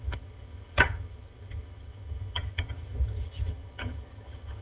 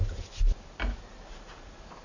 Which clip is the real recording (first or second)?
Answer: second